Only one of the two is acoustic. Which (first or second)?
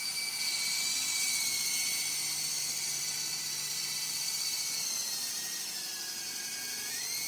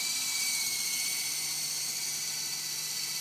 first